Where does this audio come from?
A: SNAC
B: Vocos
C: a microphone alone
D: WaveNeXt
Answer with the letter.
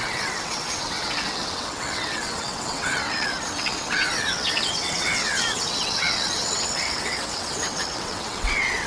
D